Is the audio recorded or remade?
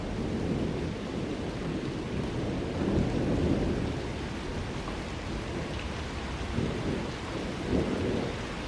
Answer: recorded